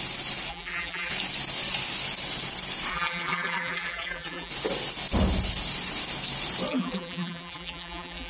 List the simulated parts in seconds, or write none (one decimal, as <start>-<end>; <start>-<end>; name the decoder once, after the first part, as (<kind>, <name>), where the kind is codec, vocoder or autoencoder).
0.5-1.1 (vocoder, BigVGAN v2); 2.9-4.5; 6.7-8.3